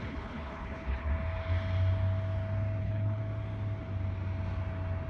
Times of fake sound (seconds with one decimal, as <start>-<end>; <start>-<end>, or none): 0.0-1.1; 2.8-3.2

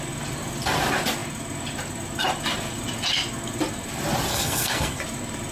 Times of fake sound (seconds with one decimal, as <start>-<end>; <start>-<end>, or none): 4.3-5.0

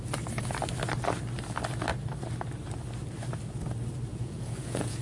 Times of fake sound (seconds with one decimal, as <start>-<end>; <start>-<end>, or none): 4.1-5.0

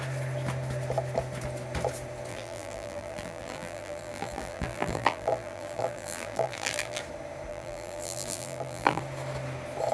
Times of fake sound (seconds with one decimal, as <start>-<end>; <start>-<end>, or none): 2.3-7.0; 7.5-9.0

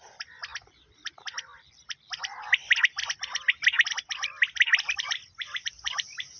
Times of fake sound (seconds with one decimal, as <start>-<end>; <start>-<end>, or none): none

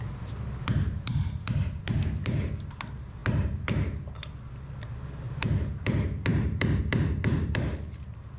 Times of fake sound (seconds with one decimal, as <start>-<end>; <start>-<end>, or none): 0.0-8.4

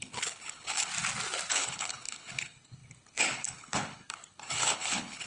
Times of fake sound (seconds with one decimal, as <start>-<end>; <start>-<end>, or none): 0.0-0.9; 1.5-5.3